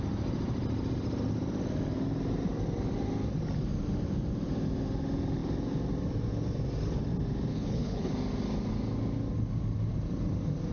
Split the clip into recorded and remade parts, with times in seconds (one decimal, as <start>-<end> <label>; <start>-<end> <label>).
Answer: 0.0-7.5 recorded; 7.5-8.1 remade; 8.1-10.7 recorded